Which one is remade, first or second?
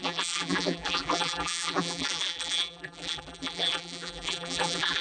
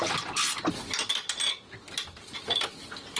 first